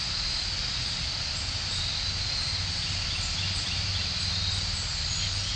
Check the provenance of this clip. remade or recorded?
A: recorded